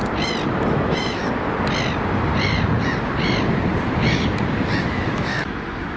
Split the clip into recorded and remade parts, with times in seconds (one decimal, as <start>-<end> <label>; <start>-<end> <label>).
0.0-0.7 recorded; 0.7-1.2 remade; 1.2-4.8 recorded; 4.8-6.0 remade